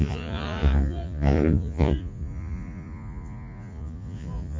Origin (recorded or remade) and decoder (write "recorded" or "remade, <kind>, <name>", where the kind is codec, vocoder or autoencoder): remade, vocoder, Vocos